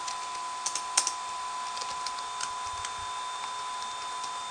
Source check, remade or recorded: recorded